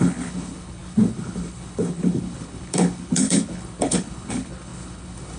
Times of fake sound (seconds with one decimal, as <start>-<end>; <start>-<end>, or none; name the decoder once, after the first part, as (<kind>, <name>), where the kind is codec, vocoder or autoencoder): 0.0-5.4 (codec, HILCodec)